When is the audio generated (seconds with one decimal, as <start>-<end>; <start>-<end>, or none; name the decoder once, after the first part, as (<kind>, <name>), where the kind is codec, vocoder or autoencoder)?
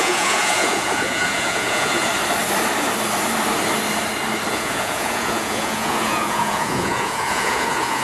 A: 0.0-2.1 (vocoder, Vocos); 4.5-8.0